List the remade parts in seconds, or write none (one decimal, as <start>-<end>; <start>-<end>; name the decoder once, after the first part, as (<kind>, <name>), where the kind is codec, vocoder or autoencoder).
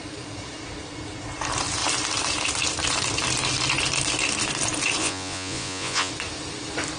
5.0-6.1 (vocoder, Vocos)